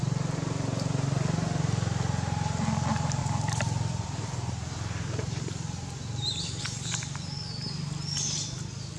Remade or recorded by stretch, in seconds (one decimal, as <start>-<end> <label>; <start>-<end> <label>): 0.0-3.2 recorded; 3.2-6.6 remade; 6.6-9.0 recorded